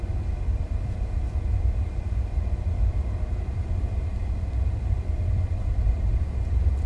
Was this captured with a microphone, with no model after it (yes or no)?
no